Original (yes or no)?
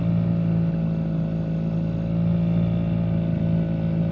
yes